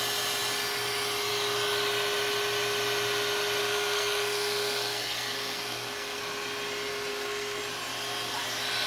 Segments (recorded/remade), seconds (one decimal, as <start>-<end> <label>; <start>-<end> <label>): 0.0-3.6 recorded; 3.6-6.2 remade; 6.2-7.1 recorded; 7.1-7.6 remade; 7.6-8.9 recorded